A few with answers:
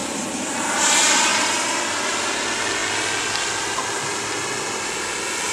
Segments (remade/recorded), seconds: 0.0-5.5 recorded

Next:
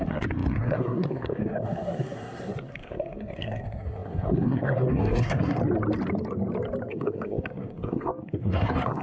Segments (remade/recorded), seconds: 0.0-5.6 remade; 5.6-6.9 recorded; 6.9-9.0 remade

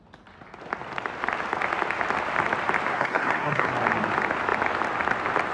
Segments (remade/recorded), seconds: 0.0-2.9 recorded; 2.9-3.7 remade; 3.7-5.5 recorded

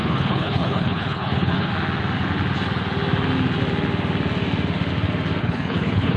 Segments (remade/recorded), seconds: 0.0-1.7 remade; 1.7-5.4 recorded; 5.4-6.2 remade

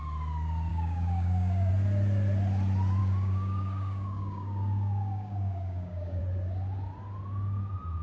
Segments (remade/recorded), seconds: 0.0-0.7 recorded; 0.7-1.7 remade; 1.7-3.0 recorded; 3.0-6.2 remade; 6.2-8.0 recorded